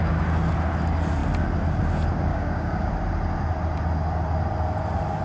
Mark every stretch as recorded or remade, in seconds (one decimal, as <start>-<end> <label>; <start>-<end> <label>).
0.0-2.3 recorded; 2.3-2.9 remade; 2.9-5.2 recorded